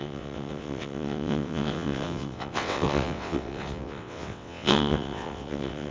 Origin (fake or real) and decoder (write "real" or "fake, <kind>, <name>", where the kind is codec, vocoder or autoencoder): fake, vocoder, WaveNeXt